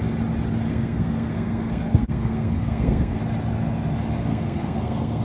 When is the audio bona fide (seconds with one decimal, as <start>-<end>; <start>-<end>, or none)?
0.0-0.7; 3.2-4.3